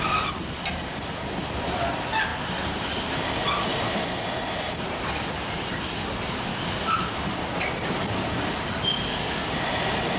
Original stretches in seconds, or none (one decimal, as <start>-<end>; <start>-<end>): 0.0-10.2